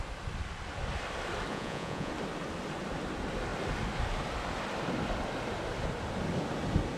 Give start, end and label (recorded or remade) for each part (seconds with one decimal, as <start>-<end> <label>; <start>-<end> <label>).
0.0-1.5 recorded; 1.5-2.1 remade; 2.1-7.0 recorded